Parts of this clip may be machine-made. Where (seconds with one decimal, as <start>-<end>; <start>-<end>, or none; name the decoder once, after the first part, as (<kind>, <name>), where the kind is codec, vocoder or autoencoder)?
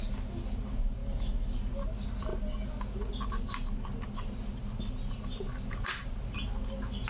1.0-1.6 (autoencoder, DAC-VAE)